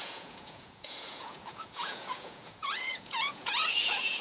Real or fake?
fake